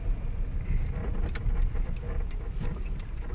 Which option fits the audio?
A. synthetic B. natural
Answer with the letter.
B